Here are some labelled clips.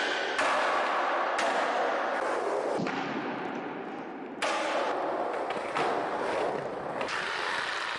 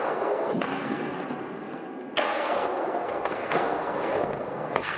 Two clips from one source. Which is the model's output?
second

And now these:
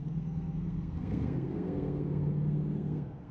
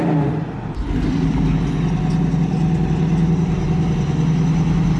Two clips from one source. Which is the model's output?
first